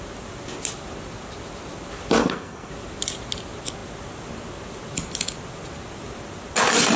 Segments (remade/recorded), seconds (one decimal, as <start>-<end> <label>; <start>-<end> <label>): 0.0-2.2 recorded; 2.2-2.7 remade; 2.7-7.0 recorded